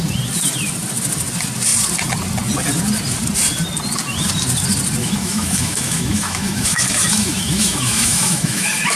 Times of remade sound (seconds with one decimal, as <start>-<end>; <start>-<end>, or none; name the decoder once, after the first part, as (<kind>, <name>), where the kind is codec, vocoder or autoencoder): 5.0-9.0 (autoencoder, DAC-VAE)